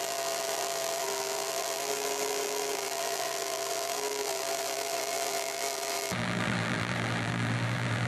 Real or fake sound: fake